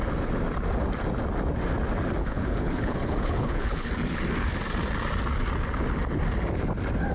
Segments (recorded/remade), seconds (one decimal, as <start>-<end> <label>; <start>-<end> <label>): 0.0-2.2 recorded; 2.2-3.9 remade; 3.9-7.1 recorded